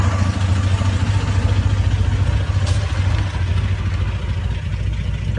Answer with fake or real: real